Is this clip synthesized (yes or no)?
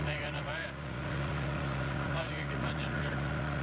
yes